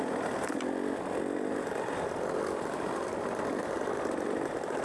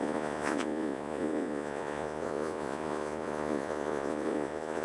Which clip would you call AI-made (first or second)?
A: second